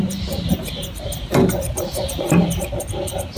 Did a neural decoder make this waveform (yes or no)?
no